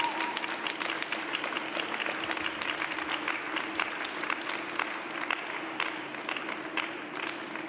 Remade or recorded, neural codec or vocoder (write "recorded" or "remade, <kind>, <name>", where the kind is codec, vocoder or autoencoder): recorded